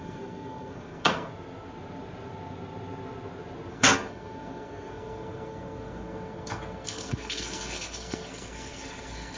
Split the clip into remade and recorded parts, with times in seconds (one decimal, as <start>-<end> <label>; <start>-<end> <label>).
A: 0.0-1.3 remade; 1.3-3.7 recorded; 3.7-9.4 remade